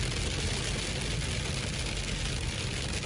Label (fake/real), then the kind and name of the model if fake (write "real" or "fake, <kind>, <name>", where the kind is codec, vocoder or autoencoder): real